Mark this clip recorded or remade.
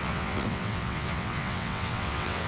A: remade